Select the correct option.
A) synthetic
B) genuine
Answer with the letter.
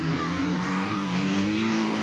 A